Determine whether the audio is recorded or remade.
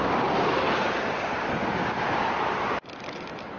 recorded